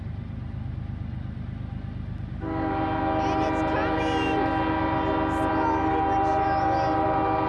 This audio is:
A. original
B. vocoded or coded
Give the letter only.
A